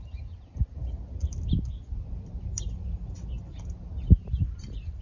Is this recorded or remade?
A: recorded